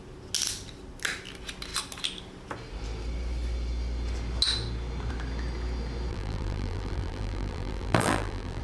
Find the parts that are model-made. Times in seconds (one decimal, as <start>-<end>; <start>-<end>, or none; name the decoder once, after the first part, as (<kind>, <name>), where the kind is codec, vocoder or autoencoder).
6.1-8.6 (vocoder, BigVGAN v2)